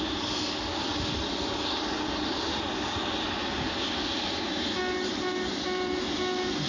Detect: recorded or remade recorded